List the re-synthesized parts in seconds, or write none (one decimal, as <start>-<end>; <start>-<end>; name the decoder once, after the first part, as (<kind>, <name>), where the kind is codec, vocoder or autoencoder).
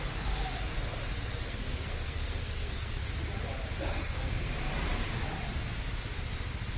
1.4-3.0 (codec, SNAC); 3.9-4.5